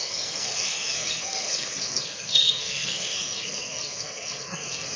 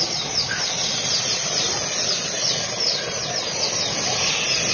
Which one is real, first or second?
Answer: second